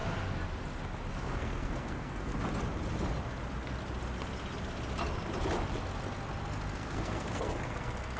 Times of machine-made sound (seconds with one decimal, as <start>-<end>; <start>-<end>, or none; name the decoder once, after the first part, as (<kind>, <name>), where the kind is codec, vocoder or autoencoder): 1.1-2.3 (codec, SNAC); 6.7-8.2